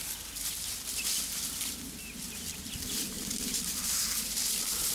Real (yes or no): no